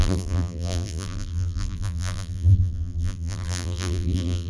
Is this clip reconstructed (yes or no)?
yes